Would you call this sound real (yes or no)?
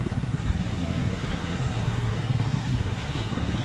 no